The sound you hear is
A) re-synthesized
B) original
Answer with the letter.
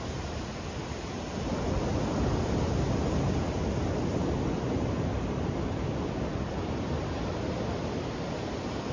B